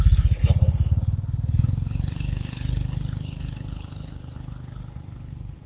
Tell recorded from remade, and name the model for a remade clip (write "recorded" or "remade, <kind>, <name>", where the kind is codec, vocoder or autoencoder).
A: recorded